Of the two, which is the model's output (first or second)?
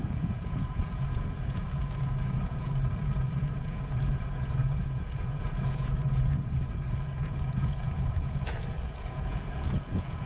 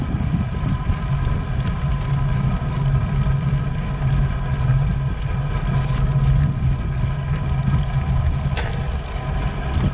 first